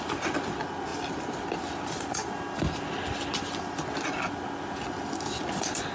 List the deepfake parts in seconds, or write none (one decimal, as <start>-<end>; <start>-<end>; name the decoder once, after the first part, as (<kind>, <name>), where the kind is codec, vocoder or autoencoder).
0.9-1.6 (vocoder, BigVGAN v2)